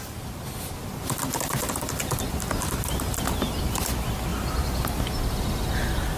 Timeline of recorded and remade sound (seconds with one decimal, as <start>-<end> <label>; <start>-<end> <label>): 0.0-6.2 recorded